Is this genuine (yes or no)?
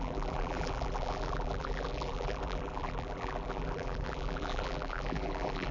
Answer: no